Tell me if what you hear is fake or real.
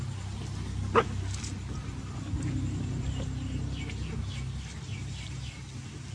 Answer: real